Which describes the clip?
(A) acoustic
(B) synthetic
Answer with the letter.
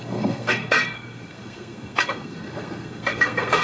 B